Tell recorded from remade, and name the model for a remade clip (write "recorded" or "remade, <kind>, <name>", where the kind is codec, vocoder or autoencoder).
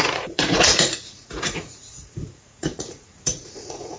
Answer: remade, vocoder, Vocos